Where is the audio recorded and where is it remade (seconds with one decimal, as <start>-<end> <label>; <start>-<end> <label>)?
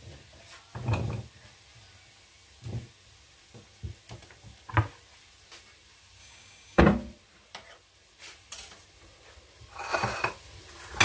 0.0-6.2 recorded; 6.2-6.8 remade; 6.8-11.0 recorded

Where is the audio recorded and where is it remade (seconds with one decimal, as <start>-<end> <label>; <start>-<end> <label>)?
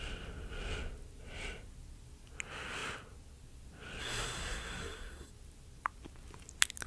0.0-4.0 recorded; 4.0-5.3 remade; 5.3-6.9 recorded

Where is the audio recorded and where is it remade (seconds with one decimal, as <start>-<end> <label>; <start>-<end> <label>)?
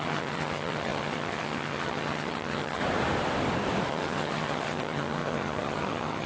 0.0-2.8 remade; 2.8-3.9 recorded; 3.9-6.3 remade